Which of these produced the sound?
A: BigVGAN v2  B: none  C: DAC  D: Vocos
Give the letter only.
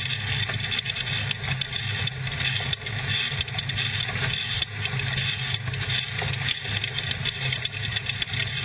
B